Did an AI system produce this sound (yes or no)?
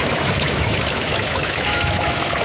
yes